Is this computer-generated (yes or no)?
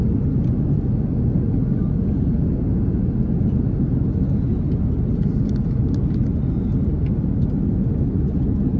no